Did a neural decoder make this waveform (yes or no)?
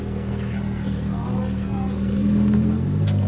yes